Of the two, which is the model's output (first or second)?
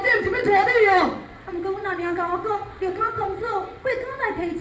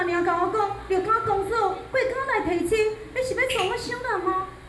first